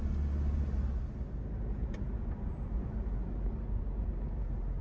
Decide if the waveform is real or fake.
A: real